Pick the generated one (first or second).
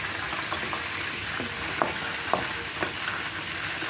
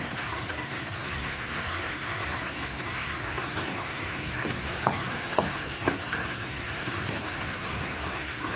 second